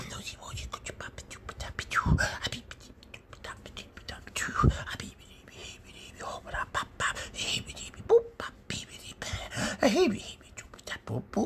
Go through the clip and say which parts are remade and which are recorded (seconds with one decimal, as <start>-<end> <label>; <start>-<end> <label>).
0.0-3.8 recorded; 3.8-4.3 remade; 4.3-11.5 recorded